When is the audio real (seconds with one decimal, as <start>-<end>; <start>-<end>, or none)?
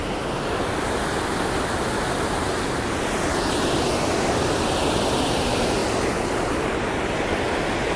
0.0-5.8; 7.6-8.0